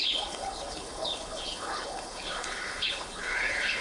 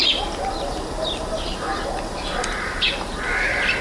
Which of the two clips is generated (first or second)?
first